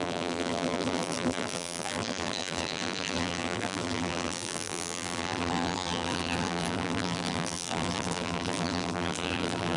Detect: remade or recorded remade